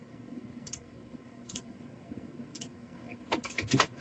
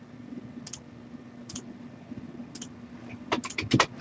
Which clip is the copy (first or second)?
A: first